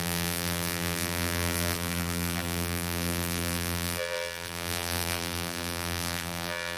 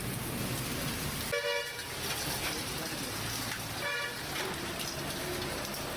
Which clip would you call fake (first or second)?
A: first